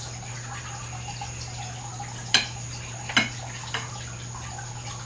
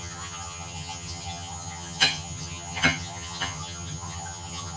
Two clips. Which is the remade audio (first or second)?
second